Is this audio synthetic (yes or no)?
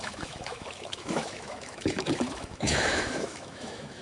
yes